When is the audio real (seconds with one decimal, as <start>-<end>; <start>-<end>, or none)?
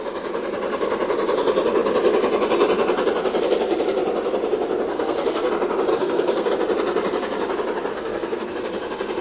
0.0-4.9; 5.5-5.9; 6.5-7.9; 8.5-9.2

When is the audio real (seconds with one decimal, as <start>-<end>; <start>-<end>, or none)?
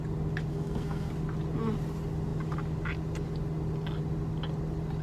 0.0-0.5; 1.1-5.0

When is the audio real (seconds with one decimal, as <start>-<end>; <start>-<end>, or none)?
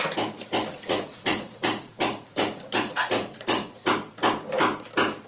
0.0-0.7; 3.9-5.3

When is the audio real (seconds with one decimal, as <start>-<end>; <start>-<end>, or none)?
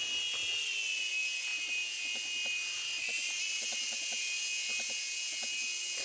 0.0-6.0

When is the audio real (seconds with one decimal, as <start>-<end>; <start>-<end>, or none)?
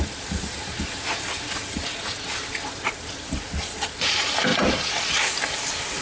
0.0-6.0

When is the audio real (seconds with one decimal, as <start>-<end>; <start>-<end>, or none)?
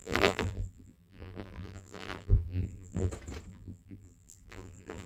3.1-3.5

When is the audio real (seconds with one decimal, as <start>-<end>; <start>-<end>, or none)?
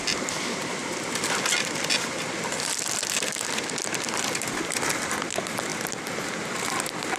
0.0-7.2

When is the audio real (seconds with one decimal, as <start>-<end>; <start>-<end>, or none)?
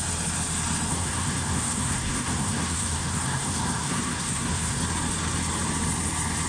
0.0-0.9; 4.8-6.5